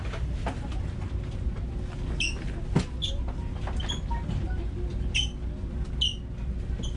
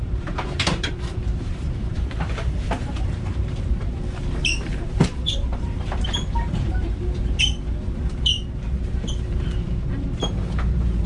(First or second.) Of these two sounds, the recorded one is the first